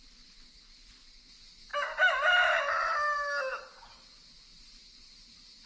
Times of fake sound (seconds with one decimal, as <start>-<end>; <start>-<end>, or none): none